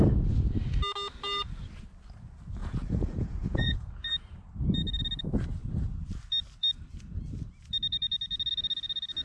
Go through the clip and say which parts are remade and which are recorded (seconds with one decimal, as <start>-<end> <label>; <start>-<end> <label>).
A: 0.0-2.6 recorded; 2.6-3.9 remade; 3.9-9.2 recorded